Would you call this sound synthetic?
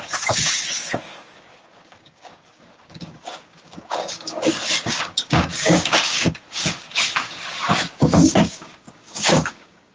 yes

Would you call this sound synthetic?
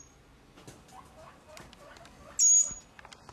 no